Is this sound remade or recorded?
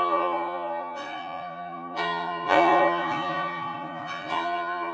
remade